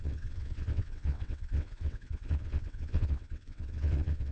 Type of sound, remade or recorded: remade